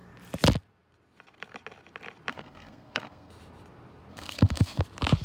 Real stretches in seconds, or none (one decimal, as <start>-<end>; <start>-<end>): 0.0-2.3; 3.3-4.1; 4.8-5.2